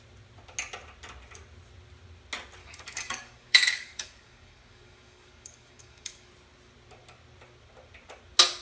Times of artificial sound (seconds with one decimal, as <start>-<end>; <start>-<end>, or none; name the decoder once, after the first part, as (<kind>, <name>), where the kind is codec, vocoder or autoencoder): 2.6-6.3 (codec, DAC)